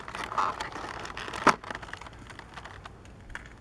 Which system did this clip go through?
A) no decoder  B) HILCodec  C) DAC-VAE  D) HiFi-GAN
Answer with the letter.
A